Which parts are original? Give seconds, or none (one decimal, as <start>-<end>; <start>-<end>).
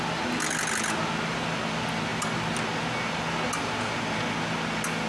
0.0-5.1